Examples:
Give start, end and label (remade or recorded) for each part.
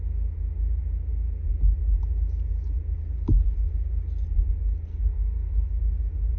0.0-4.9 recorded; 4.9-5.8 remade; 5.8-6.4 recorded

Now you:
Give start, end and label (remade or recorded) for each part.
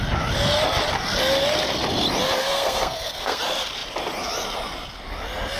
0.0-2.4 recorded; 2.4-3.4 remade; 3.4-5.6 recorded